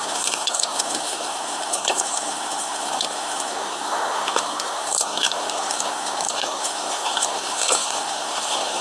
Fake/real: fake